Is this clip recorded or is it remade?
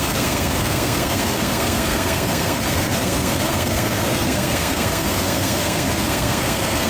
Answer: remade